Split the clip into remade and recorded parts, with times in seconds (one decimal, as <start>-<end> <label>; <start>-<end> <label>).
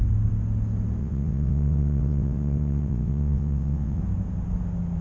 0.0-1.0 recorded; 1.0-4.0 remade; 4.0-5.0 recorded